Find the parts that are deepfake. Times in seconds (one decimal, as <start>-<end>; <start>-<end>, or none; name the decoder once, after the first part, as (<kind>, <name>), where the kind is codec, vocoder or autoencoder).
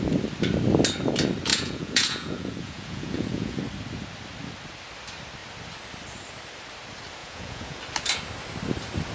1.5-3.6 (vocoder, Vocos); 7.2-7.8